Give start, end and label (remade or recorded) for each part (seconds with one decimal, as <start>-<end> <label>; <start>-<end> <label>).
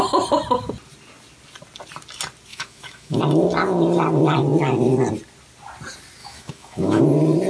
0.0-2.5 recorded; 2.5-3.2 remade; 3.2-6.2 recorded; 6.2-7.0 remade; 7.0-7.5 recorded